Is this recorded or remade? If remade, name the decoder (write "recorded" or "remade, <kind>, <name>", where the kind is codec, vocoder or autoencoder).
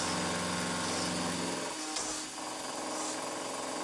recorded